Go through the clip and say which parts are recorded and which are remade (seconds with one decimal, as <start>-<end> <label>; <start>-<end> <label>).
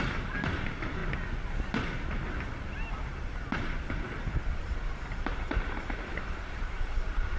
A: 0.0-1.0 remade; 1.0-4.6 recorded; 4.6-7.4 remade